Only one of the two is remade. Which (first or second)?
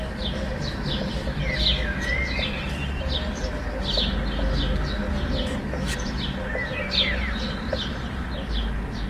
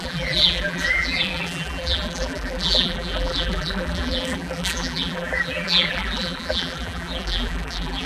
second